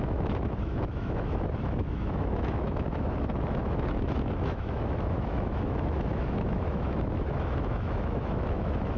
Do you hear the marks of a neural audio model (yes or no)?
yes